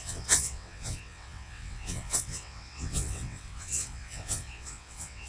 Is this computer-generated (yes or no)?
yes